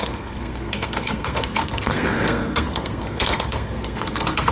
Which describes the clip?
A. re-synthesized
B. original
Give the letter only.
A